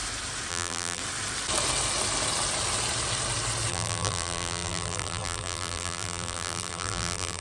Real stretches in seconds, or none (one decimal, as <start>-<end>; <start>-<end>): 0.0-0.5; 1.0-3.7